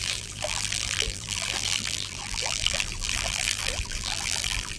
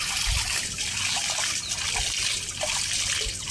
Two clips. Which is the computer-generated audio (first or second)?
first